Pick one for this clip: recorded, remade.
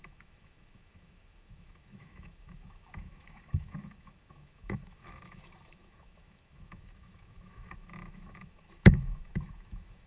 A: remade